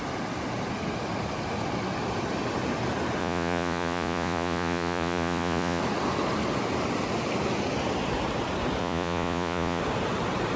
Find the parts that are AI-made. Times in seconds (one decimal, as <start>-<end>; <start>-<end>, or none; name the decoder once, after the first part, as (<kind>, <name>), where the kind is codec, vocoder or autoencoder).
3.2-5.8 (vocoder, Vocos); 8.8-9.8